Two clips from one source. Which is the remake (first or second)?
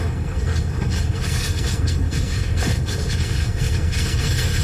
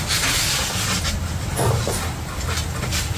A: first